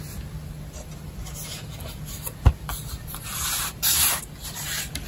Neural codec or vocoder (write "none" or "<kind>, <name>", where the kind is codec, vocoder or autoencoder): none